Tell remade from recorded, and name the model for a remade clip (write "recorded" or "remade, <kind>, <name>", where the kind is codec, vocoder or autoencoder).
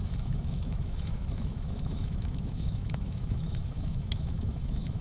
remade, autoencoder, DAC-VAE